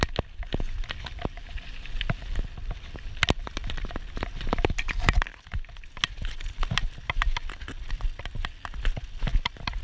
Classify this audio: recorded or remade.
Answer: recorded